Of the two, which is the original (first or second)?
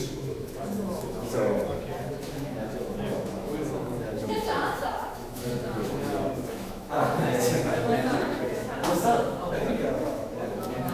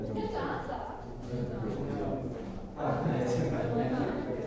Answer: second